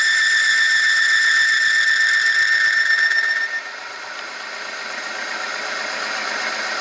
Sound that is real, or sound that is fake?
fake